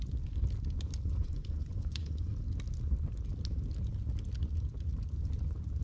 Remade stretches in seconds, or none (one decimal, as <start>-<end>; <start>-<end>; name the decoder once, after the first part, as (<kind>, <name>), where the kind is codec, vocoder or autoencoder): 1.1-2.3 (vocoder, Vocos)